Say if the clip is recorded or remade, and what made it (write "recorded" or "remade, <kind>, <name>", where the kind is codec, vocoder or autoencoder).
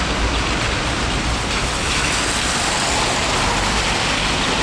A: recorded